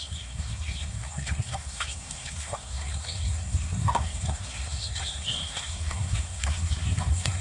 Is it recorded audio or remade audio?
remade